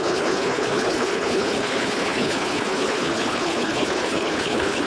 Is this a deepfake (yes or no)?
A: yes